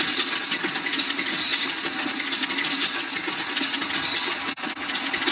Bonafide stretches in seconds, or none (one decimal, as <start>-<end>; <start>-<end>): 0.0-5.3